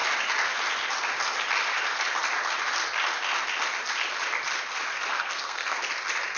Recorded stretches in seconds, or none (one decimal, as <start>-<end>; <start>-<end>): 0.0-5.1; 5.8-6.4